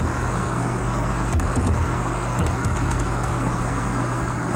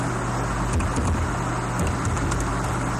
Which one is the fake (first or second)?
first